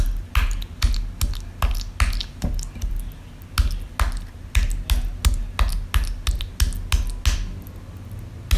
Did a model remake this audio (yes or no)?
no